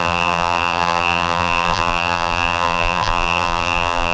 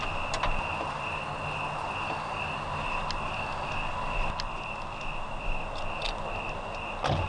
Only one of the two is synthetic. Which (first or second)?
first